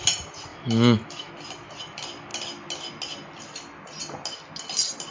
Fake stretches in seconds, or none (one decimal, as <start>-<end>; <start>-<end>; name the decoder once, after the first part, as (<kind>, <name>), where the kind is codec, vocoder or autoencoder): 0.5-1.3 (autoencoder, DAC-VAE)